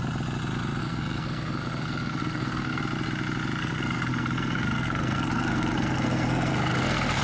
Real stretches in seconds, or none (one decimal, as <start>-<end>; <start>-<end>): 0.0-0.8; 2.8-3.6